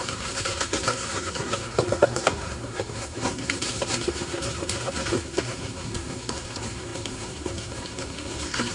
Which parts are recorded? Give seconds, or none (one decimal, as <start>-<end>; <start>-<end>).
none

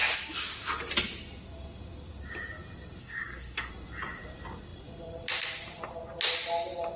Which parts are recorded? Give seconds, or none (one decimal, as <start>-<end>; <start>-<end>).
0.0-3.0; 3.7-7.0

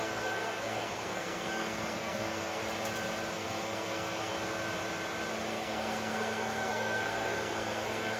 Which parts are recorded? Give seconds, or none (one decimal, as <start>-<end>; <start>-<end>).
2.6-3.3; 4.3-5.5

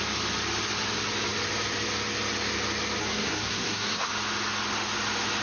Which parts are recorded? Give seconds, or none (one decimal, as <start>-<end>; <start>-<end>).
0.0-3.0; 4.1-5.4

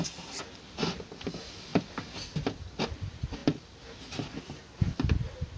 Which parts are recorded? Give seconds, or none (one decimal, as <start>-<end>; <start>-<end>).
0.0-5.6

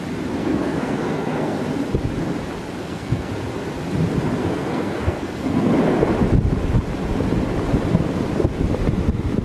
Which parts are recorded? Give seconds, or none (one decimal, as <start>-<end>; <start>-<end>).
0.0-0.4; 1.6-2.8; 3.3-4.4; 5.7-9.4

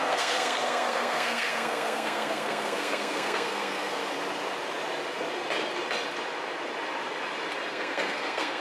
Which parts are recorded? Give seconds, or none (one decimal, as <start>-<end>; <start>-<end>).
4.0-7.7

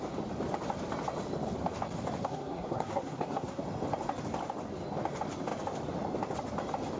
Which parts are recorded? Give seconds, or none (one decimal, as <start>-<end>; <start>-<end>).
0.0-2.2; 3.6-7.0